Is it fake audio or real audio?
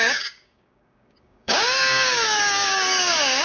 fake